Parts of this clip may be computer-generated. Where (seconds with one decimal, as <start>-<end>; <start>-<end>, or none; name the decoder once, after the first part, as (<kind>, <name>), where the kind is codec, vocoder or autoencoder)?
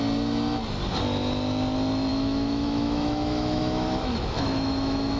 2.1-5.2 (autoencoder, DAC-VAE)